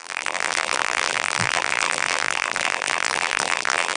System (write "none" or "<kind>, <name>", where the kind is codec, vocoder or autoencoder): vocoder, BigVGAN v2